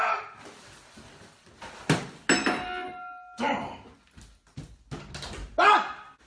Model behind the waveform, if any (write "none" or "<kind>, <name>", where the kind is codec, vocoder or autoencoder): none